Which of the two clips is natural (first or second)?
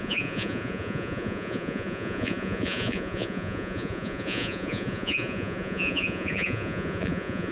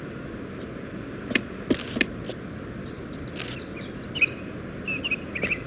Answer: second